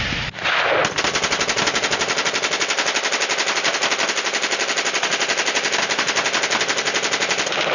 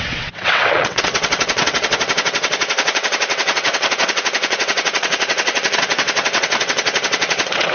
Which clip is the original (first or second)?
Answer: first